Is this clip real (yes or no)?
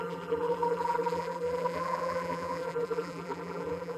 no